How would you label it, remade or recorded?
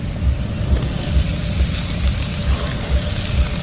recorded